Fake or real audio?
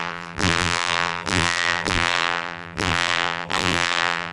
fake